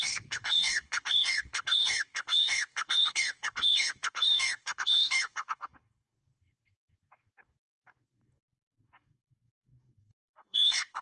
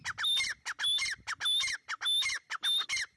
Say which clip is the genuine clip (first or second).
second